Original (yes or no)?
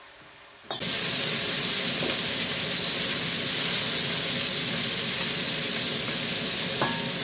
yes